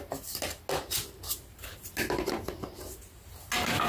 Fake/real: real